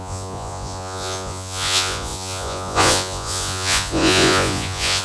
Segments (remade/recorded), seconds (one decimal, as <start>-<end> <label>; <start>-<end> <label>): 0.0-5.0 remade